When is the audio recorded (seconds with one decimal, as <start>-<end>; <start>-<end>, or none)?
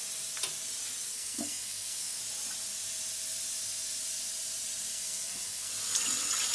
0.0-1.1; 2.2-4.9; 5.7-6.5